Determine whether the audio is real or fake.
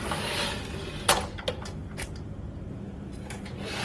real